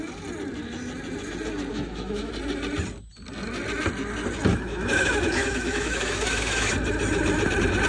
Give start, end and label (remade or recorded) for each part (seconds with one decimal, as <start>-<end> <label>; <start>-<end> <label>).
0.0-1.7 recorded; 1.7-2.3 remade; 2.3-4.5 recorded; 4.5-6.7 remade; 6.7-7.9 recorded